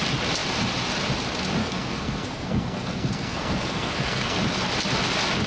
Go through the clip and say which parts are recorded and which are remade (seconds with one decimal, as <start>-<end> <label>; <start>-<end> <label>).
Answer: 0.0-1.6 recorded; 1.6-4.4 remade; 4.4-5.5 recorded